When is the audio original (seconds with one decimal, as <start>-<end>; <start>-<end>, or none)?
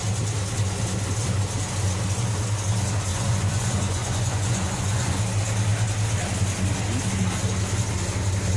0.0-3.1; 5.2-8.6